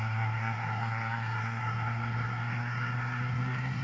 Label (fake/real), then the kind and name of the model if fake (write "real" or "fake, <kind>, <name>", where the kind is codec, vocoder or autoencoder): fake, codec, SNAC